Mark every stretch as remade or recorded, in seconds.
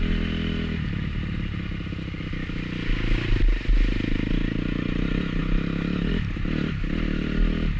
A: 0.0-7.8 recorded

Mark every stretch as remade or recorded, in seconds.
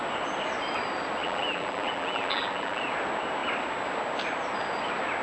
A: 0.0-1.2 recorded; 1.2-2.8 remade; 2.8-5.2 recorded